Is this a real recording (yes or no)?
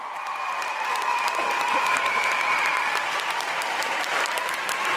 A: no